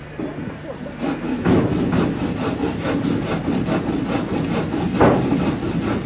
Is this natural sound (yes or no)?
yes